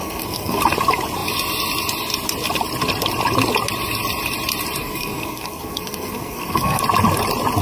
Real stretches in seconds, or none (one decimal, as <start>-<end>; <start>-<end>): 0.6-4.8; 6.8-7.6